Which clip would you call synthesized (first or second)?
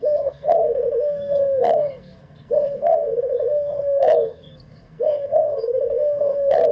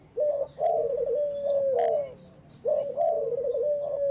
first